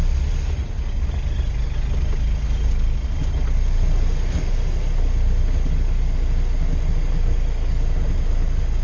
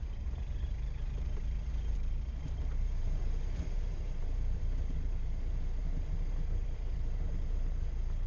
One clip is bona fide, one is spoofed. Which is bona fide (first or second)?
first